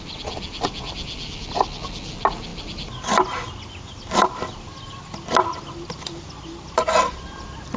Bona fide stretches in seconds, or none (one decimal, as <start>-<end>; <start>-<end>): 0.0-7.8